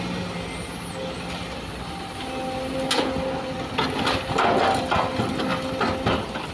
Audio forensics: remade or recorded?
recorded